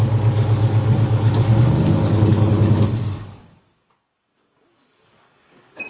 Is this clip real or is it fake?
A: fake